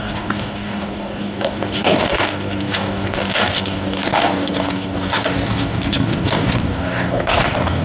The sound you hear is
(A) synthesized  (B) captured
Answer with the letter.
A